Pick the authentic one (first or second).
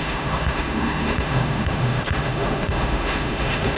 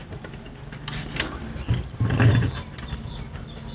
second